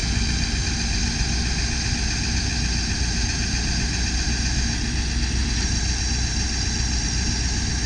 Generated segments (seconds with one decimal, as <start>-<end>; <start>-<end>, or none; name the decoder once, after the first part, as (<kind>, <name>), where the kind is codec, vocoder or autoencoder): 2.5-3.6 (vocoder, BigVGAN v2); 5.4-6.0